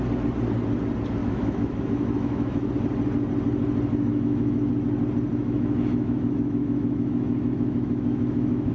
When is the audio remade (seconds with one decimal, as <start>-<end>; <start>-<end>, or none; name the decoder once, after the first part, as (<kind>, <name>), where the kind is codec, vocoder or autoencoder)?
1.2-2.7 (autoencoder, DAC-VAE); 4.1-4.7; 5.3-8.7